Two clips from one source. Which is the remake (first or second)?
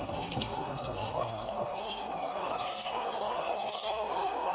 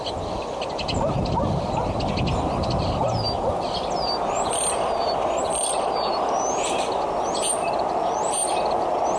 first